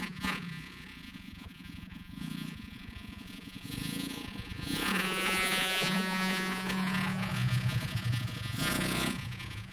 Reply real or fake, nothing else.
fake